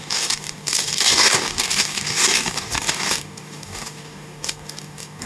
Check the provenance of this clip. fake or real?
fake